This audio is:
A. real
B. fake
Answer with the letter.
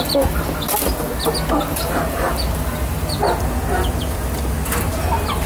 A